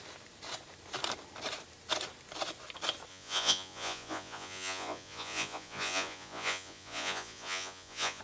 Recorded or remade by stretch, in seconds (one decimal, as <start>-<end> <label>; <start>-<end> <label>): 0.0-3.1 recorded; 3.1-8.2 remade